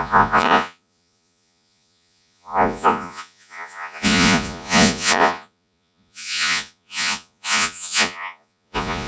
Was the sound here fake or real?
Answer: fake